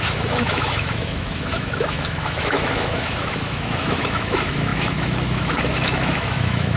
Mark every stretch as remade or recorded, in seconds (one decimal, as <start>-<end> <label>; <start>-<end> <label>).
0.0-6.8 remade